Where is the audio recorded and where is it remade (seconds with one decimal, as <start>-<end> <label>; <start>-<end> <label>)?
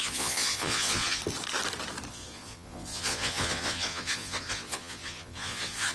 0.0-1.2 remade; 1.2-2.1 recorded; 2.1-5.9 remade